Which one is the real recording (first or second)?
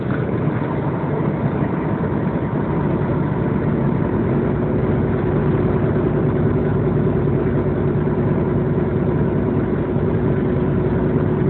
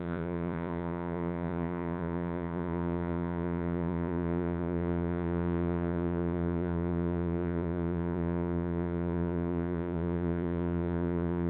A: first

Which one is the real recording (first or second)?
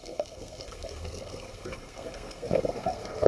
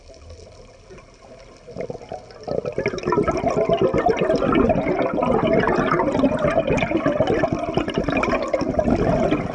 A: second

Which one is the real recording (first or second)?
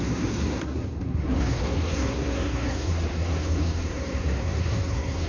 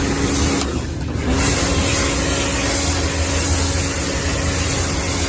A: second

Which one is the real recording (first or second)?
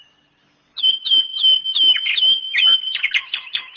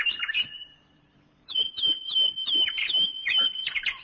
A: first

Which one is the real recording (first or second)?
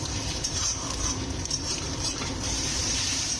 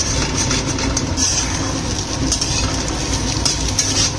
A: second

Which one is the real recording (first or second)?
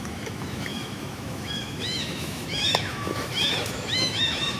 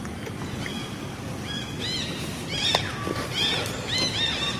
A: second